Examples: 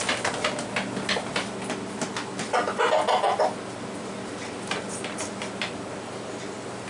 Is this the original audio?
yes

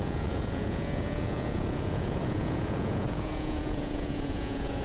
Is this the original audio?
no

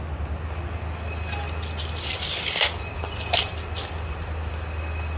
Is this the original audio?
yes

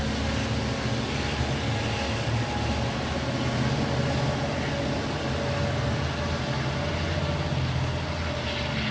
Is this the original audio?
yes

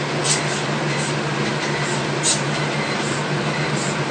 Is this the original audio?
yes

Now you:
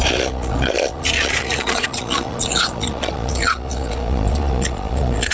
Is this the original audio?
no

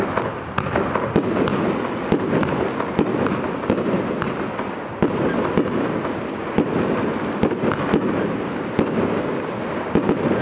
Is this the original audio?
yes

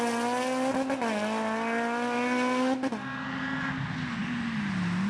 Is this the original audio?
yes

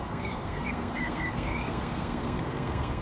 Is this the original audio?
no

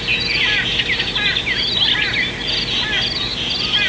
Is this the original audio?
yes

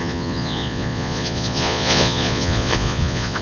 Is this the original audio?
no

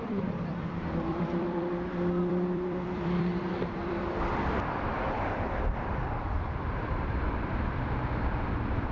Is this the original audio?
no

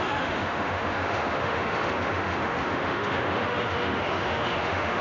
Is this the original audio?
no